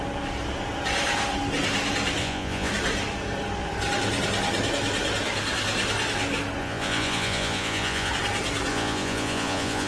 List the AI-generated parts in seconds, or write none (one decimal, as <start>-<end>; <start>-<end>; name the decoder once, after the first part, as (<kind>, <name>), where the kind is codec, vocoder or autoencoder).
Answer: 2.2-2.7 (vocoder, Vocos); 6.6-8.1; 8.7-9.9